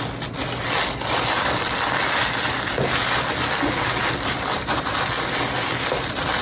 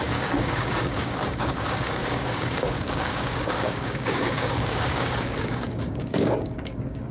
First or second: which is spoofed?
second